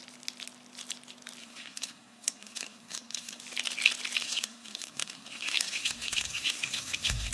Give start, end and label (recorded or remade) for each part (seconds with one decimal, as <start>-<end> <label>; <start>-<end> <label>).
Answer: 0.0-1.4 recorded; 1.4-3.4 remade; 3.4-4.2 recorded; 4.2-7.3 remade